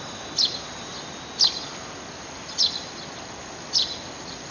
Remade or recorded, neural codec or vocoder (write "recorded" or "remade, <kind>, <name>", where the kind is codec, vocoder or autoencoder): recorded